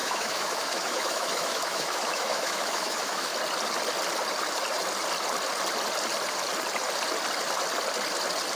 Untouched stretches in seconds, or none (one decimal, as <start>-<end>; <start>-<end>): 3.3-8.6